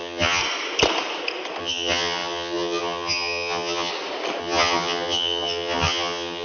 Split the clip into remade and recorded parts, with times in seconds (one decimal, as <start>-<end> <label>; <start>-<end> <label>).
0.0-0.4 remade; 0.4-1.6 recorded; 1.6-3.9 remade; 3.9-4.4 recorded; 4.4-6.4 remade